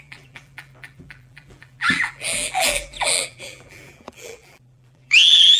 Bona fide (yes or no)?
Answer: no